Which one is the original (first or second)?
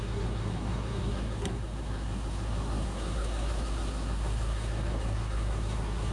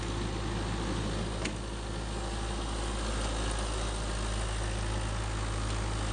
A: second